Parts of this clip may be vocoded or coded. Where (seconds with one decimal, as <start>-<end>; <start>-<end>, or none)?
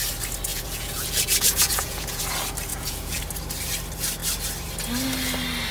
0.5-2.2; 2.7-3.2